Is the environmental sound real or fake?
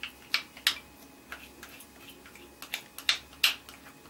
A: real